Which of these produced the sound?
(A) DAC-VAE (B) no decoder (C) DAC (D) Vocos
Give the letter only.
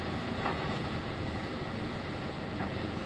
D